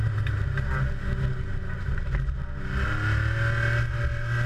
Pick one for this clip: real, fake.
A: real